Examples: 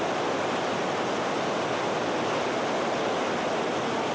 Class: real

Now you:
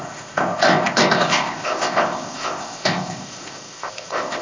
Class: fake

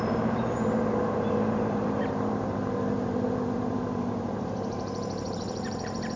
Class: fake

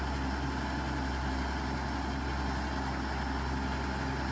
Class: real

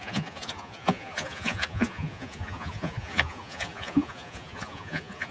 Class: fake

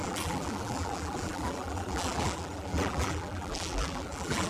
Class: fake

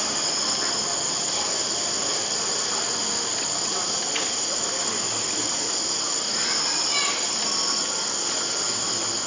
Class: real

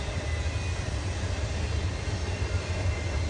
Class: real